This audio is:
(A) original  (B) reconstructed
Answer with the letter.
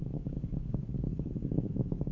B